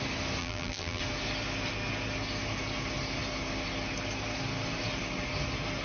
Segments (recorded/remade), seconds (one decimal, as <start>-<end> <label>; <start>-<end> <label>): 0.0-0.4 recorded; 0.4-1.0 remade; 1.0-5.8 recorded